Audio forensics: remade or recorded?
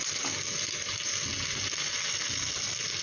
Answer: recorded